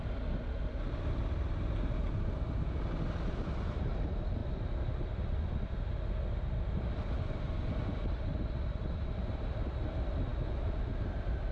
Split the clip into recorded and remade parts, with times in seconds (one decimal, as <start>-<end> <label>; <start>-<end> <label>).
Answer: 0.0-11.5 recorded